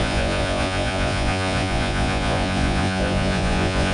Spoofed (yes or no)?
yes